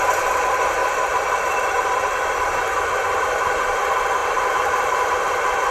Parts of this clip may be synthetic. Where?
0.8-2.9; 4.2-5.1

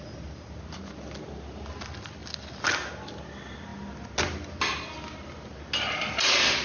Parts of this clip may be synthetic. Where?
none

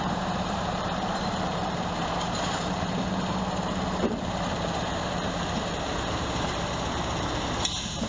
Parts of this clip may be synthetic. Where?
0.0-2.6; 3.6-8.1

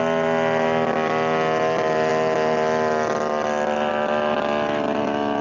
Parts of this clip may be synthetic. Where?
none